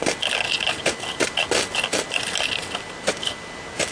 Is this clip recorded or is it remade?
recorded